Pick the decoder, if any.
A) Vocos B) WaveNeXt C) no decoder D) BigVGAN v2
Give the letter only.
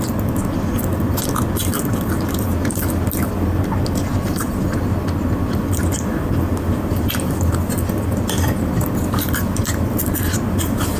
C